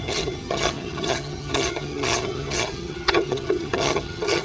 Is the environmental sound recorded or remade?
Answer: remade